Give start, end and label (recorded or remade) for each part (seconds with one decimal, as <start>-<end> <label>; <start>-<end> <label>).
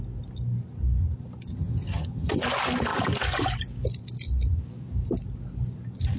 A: 0.0-1.5 recorded; 1.5-2.3 remade; 2.3-6.2 recorded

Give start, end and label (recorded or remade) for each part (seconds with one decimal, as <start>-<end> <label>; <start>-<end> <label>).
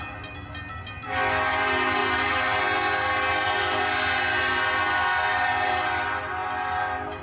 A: 0.0-7.2 recorded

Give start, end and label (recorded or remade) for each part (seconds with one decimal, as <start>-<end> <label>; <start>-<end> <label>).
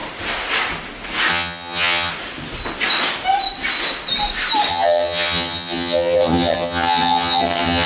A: 0.0-1.3 recorded; 1.3-2.1 remade; 2.1-4.7 recorded; 4.7-7.9 remade